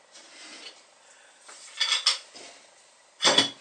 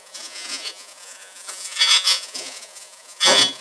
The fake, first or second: second